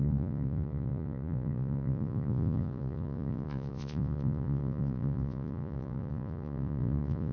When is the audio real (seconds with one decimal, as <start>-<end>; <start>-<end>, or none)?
none